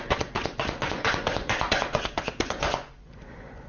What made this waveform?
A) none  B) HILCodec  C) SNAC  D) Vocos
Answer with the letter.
D